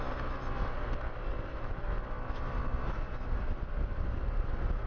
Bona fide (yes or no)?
yes